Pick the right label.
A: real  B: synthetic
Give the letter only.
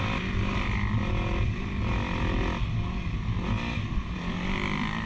A